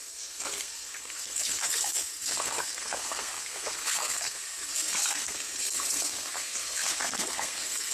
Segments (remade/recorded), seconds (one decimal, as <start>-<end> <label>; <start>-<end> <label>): 0.0-7.9 remade